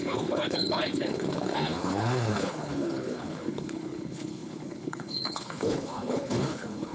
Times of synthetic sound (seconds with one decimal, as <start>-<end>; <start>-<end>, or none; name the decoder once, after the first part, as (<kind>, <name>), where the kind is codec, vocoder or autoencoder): 0.0-6.9 (codec, HILCodec)